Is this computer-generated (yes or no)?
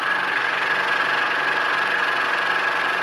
no